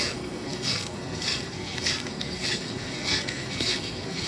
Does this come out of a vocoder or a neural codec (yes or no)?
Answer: yes